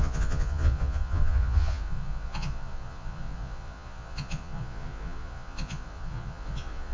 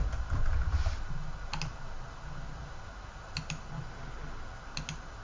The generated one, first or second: first